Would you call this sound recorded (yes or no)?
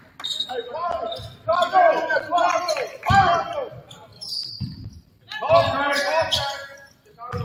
yes